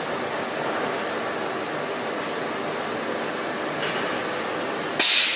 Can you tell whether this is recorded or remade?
recorded